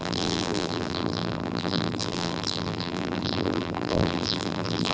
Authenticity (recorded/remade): remade